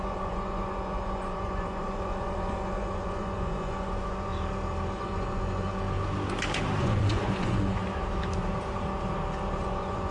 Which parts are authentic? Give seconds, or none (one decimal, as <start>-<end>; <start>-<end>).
4.3-4.9; 5.7-6.8; 7.8-9.6

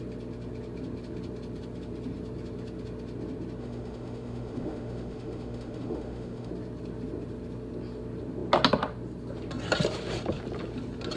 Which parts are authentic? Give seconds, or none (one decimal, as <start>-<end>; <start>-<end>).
0.0-3.6; 6.5-11.2

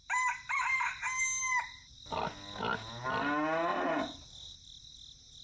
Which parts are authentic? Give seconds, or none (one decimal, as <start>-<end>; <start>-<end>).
1.2-3.7; 4.7-5.4

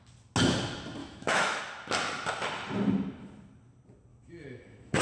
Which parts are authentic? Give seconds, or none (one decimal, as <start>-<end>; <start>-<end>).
0.0-1.0; 1.6-4.1